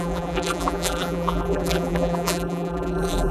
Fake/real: fake